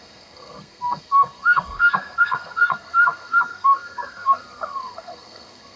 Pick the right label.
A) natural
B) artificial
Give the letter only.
B